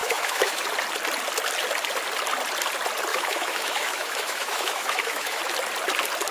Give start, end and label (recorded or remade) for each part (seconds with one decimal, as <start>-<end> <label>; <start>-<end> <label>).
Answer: 0.0-0.6 remade; 0.6-3.1 recorded; 3.1-5.4 remade; 5.4-6.3 recorded